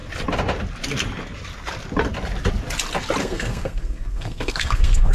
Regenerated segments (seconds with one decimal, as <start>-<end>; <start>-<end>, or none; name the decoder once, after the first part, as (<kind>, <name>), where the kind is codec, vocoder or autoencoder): 3.2-5.1 (codec, SNAC)